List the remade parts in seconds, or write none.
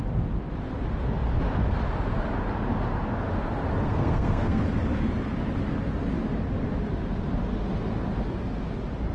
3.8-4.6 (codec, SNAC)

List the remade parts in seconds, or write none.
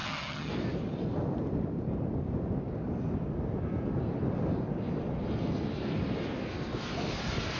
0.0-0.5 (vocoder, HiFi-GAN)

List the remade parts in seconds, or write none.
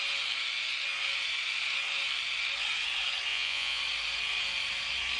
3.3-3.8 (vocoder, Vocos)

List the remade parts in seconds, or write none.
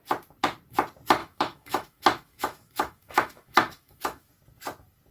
1.2-4.3 (autoencoder, DAC-VAE)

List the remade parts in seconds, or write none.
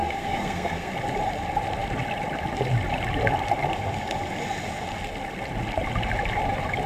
0.0-0.9 (codec, SNAC)